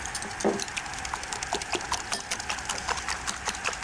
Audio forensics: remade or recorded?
recorded